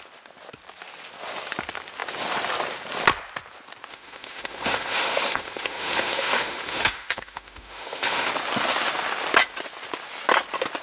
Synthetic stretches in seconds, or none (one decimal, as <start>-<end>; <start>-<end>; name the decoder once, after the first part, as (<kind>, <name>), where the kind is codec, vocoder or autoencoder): 3.9-8.3 (autoencoder, DAC-VAE)